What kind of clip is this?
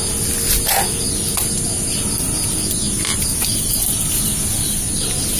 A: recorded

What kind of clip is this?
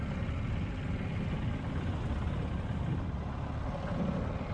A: recorded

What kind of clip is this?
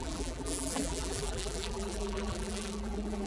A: remade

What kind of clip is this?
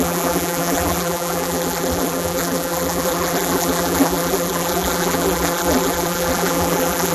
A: remade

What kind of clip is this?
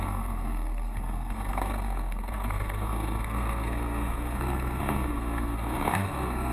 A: remade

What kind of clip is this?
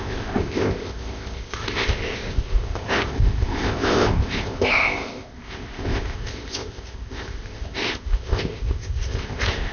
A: remade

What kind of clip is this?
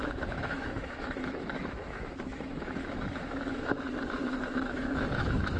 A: remade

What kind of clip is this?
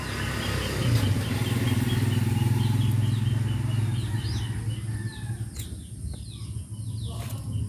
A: recorded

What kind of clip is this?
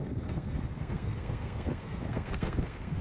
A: remade